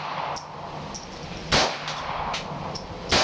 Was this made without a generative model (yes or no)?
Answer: yes